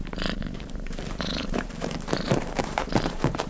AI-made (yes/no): yes